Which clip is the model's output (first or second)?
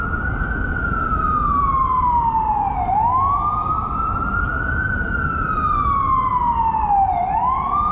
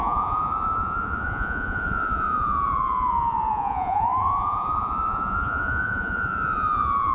second